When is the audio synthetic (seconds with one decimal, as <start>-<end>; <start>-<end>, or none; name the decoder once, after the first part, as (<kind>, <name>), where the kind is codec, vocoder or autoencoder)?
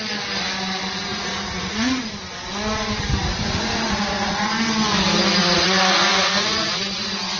1.1-2.0 (vocoder, Vocos); 3.3-4.5; 5.4-7.4